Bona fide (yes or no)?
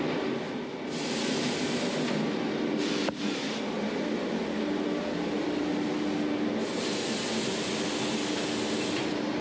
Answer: yes